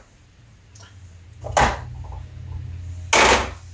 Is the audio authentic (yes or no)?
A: yes